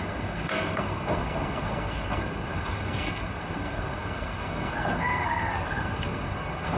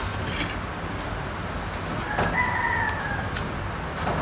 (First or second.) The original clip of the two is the second